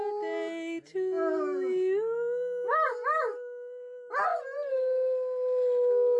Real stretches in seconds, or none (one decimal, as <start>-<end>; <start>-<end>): 0.0-6.2